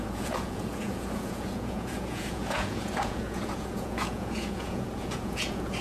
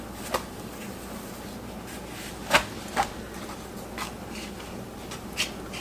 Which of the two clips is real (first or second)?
second